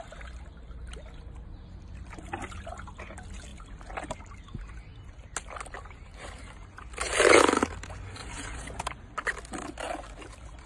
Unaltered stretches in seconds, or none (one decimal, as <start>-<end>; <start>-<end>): 0.0-8.2; 8.8-10.7